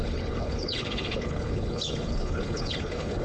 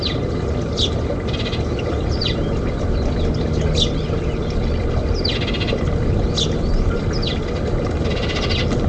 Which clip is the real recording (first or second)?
second